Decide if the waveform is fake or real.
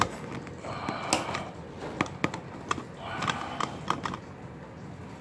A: real